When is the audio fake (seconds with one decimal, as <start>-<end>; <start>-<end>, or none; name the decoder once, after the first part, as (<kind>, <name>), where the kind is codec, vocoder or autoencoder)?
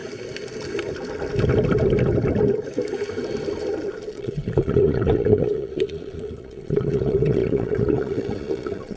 4.1-9.0 (vocoder, Vocos)